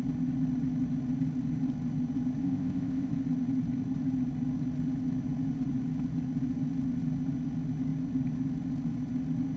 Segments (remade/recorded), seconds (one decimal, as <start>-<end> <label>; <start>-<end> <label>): 0.0-2.4 recorded; 2.4-3.1 remade; 3.1-9.6 recorded

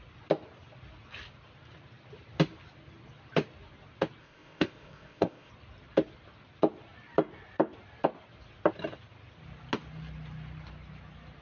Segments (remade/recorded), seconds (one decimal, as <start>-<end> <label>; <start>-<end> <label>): 0.0-4.2 recorded; 4.2-5.5 remade; 5.5-11.4 recorded

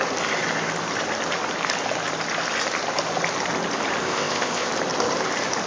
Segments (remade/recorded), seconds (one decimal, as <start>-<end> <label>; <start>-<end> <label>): 0.0-4.0 recorded; 4.0-4.7 remade; 4.7-5.7 recorded

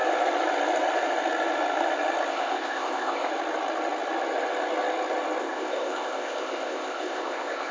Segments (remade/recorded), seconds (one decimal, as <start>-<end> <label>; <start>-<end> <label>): 0.0-2.3 recorded; 2.3-3.3 remade; 3.3-5.4 recorded; 5.4-7.7 remade